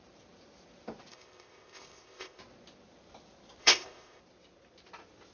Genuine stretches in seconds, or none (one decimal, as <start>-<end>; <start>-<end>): 0.0-1.1; 2.4-3.6; 4.2-5.3